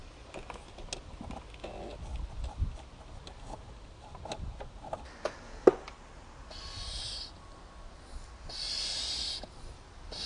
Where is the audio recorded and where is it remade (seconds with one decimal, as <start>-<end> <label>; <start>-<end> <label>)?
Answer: 0.0-10.3 recorded